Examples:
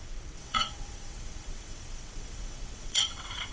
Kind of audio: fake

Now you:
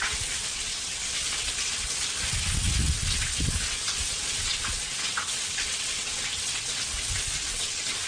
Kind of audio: fake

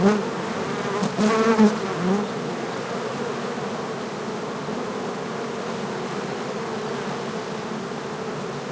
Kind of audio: real